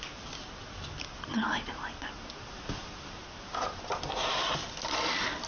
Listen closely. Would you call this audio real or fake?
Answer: real